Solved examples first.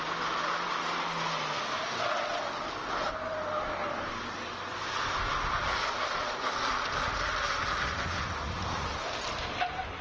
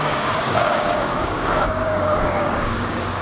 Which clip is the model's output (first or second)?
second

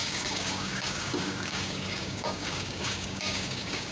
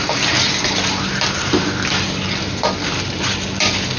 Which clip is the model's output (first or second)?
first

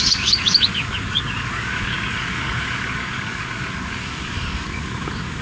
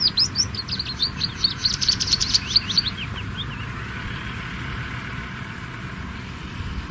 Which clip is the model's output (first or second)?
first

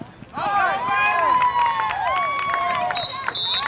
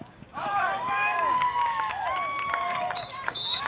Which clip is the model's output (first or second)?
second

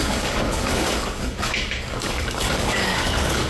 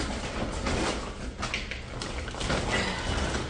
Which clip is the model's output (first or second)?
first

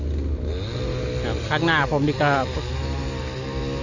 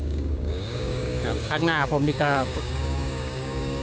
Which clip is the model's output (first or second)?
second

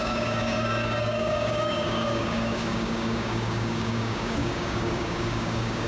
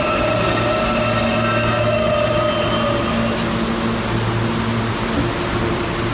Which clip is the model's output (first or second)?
first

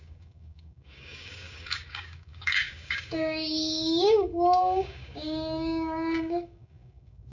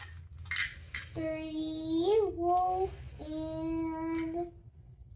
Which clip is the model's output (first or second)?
first